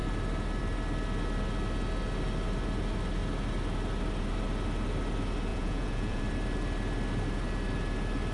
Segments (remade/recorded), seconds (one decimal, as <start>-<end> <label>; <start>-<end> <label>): 0.0-5.5 recorded; 5.5-6.2 remade; 6.2-8.3 recorded